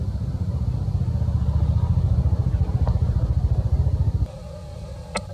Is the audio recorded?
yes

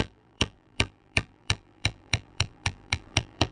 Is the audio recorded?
no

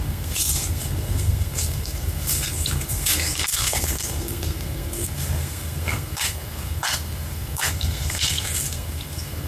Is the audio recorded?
no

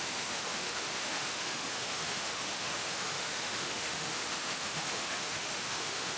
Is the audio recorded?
no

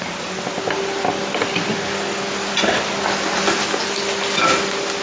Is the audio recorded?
yes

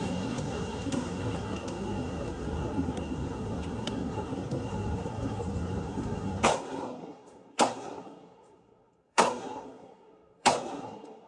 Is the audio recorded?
no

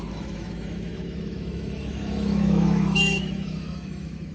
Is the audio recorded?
no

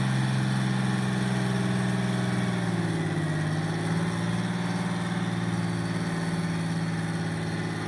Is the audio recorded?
yes